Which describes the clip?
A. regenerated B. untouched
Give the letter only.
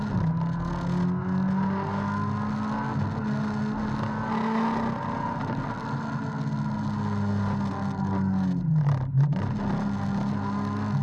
B